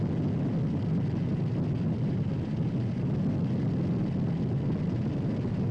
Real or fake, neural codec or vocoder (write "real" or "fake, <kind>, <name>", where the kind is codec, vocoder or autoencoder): real